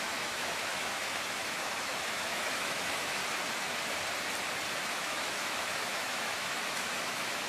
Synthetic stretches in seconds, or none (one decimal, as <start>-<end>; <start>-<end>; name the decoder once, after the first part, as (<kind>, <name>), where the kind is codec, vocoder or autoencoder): 0.0-3.2 (autoencoder, DAC-VAE); 4.9-7.5